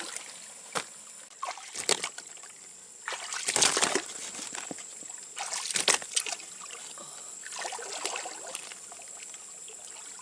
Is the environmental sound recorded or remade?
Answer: recorded